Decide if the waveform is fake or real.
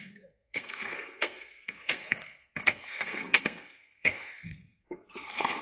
fake